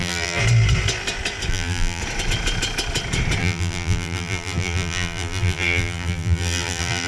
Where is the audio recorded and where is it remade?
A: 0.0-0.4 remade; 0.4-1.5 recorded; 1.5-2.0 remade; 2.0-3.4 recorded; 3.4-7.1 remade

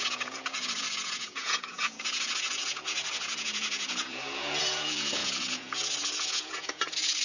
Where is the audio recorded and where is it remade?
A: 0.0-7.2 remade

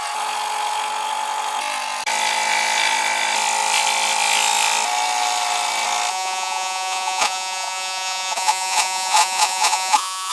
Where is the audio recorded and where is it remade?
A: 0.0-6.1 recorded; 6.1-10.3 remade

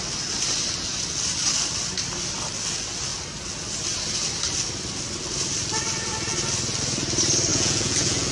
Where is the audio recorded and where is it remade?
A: 0.0-7.5 recorded; 7.5-8.3 remade